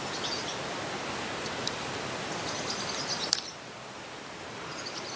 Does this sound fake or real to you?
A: real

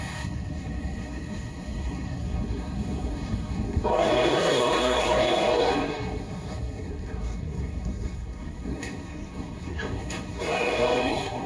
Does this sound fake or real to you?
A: fake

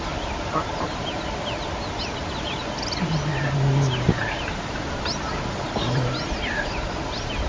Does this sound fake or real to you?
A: real